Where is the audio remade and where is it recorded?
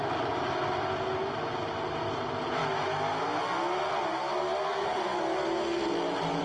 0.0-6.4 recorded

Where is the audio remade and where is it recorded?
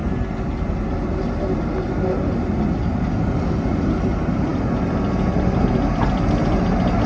0.0-7.1 recorded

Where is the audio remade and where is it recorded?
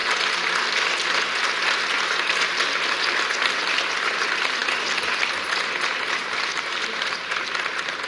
0.0-6.2 recorded; 6.2-7.4 remade; 7.4-8.1 recorded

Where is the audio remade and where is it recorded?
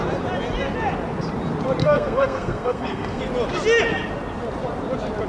0.0-1.8 recorded; 1.8-3.2 remade; 3.2-5.3 recorded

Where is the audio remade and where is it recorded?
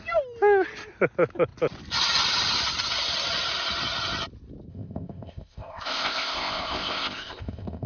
0.0-4.7 recorded; 4.7-7.9 remade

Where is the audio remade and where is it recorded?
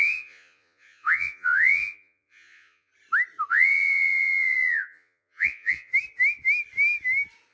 0.0-2.9 remade; 2.9-3.5 recorded; 3.5-5.9 remade; 5.9-7.5 recorded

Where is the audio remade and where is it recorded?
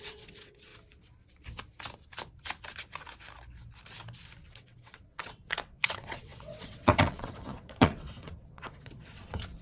0.0-0.7 remade; 0.7-4.5 recorded; 4.5-9.6 remade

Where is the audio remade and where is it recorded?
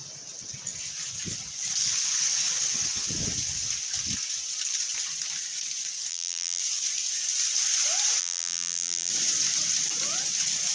0.0-6.1 recorded; 6.1-6.6 remade; 6.6-8.2 recorded; 8.2-9.1 remade; 9.1-10.7 recorded